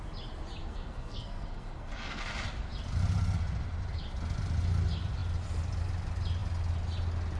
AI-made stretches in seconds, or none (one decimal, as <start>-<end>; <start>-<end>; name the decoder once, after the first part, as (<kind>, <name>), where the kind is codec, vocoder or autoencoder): 0.6-2.2 (codec, SNAC)